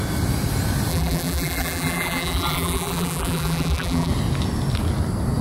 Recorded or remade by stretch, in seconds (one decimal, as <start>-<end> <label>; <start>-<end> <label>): 0.0-0.9 recorded; 0.9-4.1 remade; 4.1-5.4 recorded